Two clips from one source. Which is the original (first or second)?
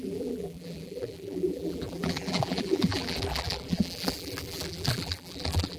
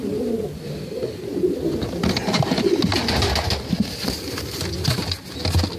second